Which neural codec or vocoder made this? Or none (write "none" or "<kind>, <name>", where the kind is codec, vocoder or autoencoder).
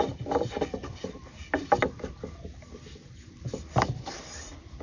none